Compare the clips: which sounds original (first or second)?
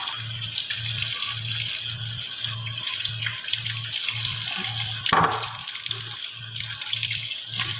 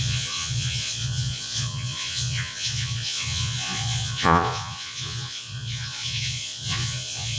first